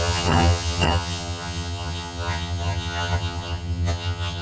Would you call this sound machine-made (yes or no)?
yes